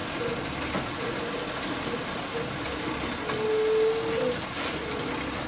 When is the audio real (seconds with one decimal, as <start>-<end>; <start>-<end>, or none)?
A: 0.0-5.5